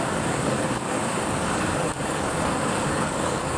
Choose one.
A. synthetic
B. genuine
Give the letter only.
A